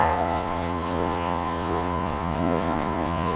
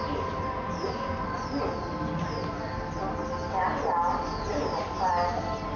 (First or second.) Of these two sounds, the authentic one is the second